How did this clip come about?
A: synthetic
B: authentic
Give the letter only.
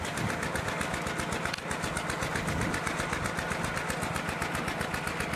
B